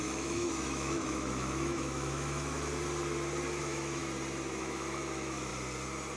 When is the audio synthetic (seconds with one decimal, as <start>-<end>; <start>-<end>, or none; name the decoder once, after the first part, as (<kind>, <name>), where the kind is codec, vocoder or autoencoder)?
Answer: 0.0-2.7 (autoencoder, DAC-VAE); 3.6-4.0; 4.6-5.5